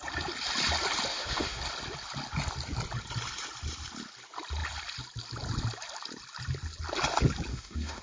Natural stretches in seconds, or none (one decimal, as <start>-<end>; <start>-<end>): 0.0-1.1; 1.6-7.5